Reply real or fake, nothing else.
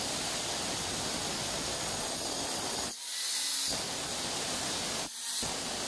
real